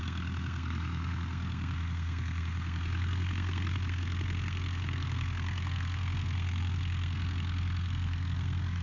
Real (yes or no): no